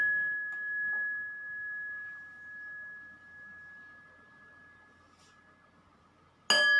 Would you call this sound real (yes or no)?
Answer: yes